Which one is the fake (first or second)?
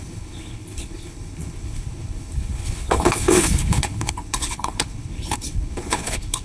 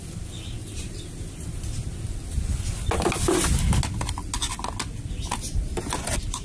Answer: first